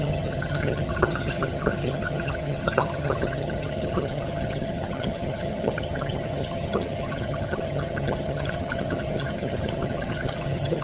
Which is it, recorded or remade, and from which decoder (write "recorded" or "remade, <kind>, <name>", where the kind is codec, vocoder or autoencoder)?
remade, vocoder, HiFi-GAN